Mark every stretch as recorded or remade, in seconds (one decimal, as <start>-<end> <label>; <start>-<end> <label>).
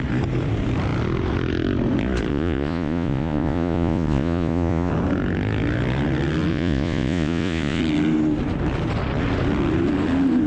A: 0.0-2.3 recorded; 2.3-4.9 remade; 4.9-6.5 recorded; 6.5-7.8 remade; 7.8-10.5 recorded